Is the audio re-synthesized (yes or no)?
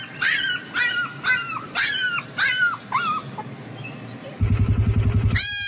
no